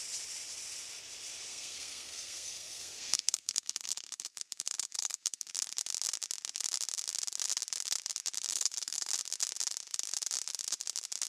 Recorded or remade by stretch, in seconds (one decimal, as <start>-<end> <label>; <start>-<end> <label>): 0.0-1.5 recorded; 1.5-5.5 remade; 5.5-8.5 recorded; 8.5-9.1 remade; 9.1-11.3 recorded